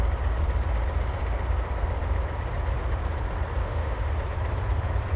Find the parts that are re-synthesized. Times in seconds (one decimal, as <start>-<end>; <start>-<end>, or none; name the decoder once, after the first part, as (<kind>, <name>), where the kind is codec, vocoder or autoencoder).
3.6-4.1 (autoencoder, DAC-VAE)